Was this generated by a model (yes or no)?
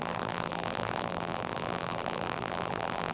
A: yes